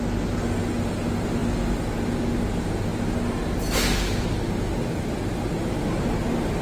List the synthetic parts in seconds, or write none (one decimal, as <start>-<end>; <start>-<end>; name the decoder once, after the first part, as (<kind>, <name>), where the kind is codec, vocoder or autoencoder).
none